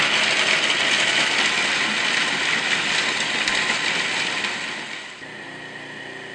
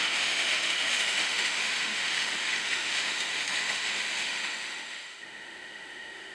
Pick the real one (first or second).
first